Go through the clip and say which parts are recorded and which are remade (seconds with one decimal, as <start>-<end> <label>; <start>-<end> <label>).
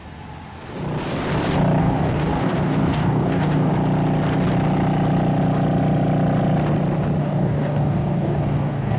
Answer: 0.0-1.8 recorded; 1.8-3.7 remade; 3.7-7.2 recorded; 7.2-9.0 remade